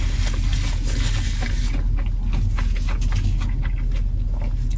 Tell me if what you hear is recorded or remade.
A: recorded